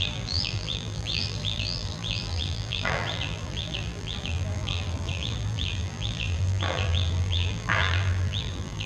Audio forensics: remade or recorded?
remade